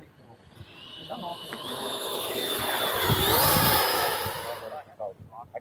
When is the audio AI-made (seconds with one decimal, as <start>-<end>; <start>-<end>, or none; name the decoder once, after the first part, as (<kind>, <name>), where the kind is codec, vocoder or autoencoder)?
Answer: 1.3-2.6 (autoencoder, DAC-VAE); 3.9-4.6